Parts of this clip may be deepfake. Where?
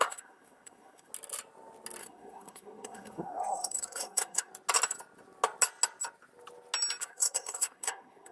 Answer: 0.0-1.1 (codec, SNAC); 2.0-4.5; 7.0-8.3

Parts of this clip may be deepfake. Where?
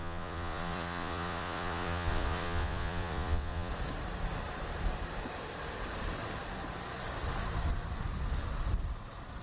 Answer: 0.0-3.7 (vocoder, Vocos)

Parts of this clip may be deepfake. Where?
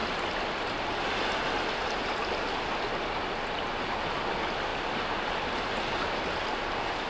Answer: none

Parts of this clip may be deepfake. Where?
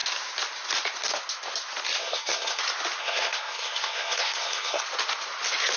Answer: 2.0-2.6 (codec, SNAC); 3.0-4.8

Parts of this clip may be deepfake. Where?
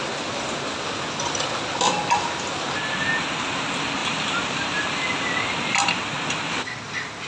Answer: 4.0-4.9 (vocoder, BigVGAN v2)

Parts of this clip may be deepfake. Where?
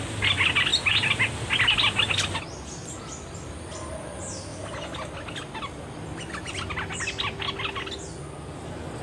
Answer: none